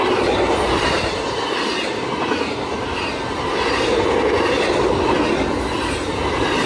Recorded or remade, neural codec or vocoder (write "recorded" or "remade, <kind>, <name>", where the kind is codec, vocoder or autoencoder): recorded